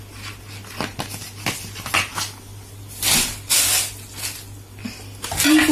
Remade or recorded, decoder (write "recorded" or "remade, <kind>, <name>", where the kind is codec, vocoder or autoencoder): recorded